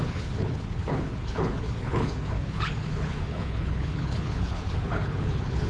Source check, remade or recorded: remade